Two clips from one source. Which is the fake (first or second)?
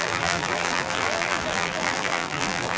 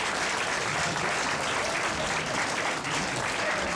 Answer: first